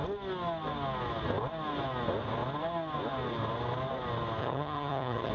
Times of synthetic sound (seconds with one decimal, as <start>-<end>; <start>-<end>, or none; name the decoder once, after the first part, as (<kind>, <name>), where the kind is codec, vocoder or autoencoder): 4.4-5.3 (vocoder, HiFi-GAN)